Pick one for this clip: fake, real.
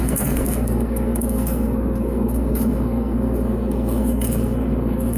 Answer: fake